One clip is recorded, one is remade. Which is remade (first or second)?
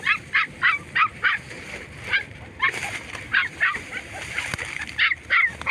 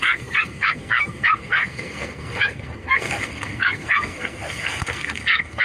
second